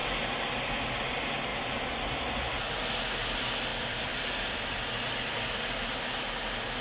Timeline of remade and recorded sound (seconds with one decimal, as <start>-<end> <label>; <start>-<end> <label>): 0.0-6.8 recorded